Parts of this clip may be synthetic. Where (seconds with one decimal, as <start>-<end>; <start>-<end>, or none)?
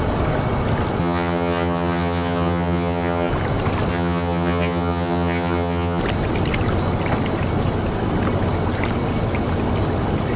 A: 1.0-3.3; 3.9-6.0